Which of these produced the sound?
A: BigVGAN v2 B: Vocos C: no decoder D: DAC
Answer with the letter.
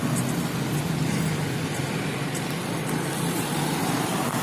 C